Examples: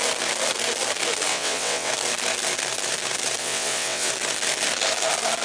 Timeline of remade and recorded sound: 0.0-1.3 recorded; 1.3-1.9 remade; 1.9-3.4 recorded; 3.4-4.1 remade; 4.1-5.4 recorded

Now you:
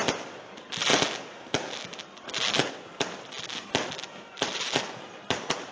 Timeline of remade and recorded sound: 0.0-5.7 recorded

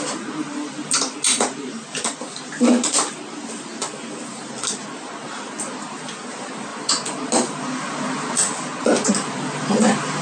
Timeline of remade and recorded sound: 0.0-10.2 recorded

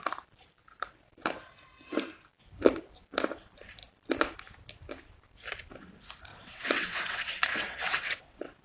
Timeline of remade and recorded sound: 0.0-6.3 recorded; 6.3-8.6 remade

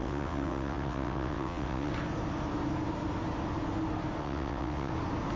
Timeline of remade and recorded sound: 0.0-1.9 remade; 1.9-4.2 recorded; 4.2-4.9 remade; 4.9-5.4 recorded